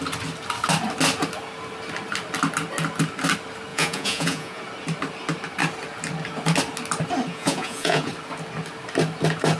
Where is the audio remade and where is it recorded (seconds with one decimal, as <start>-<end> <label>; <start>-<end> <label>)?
0.0-3.7 recorded; 3.7-4.6 remade; 4.6-7.3 recorded; 7.3-8.1 remade; 8.1-9.6 recorded

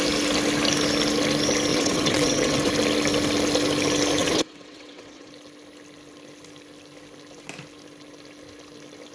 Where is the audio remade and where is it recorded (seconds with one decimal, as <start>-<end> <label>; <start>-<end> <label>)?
0.0-1.7 recorded; 1.7-2.7 remade; 2.7-4.2 recorded; 4.2-5.3 remade; 5.3-9.1 recorded

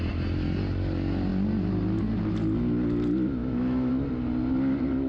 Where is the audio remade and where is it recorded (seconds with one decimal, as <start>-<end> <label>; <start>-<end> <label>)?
0.0-3.4 recorded; 3.4-3.9 remade; 3.9-5.1 recorded

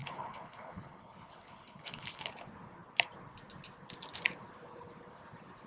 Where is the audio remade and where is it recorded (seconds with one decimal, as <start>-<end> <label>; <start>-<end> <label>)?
0.0-2.3 remade; 2.3-5.7 recorded

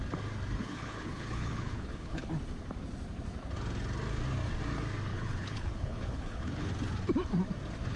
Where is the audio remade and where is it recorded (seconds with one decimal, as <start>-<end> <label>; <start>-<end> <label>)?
0.0-0.6 recorded; 0.6-2.3 remade; 2.3-5.1 recorded; 5.1-6.7 remade; 6.7-8.0 recorded